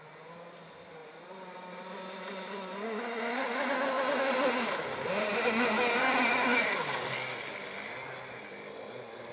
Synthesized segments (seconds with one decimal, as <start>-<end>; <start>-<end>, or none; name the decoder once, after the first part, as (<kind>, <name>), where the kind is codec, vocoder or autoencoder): none